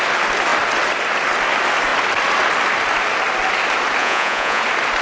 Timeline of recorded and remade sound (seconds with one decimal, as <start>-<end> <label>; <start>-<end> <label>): 0.0-4.0 recorded; 4.0-4.6 remade; 4.6-5.0 recorded